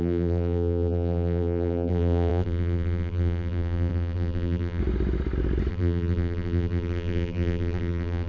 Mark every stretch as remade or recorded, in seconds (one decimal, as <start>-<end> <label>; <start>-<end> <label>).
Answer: 0.0-4.8 remade; 4.8-5.7 recorded; 5.7-8.3 remade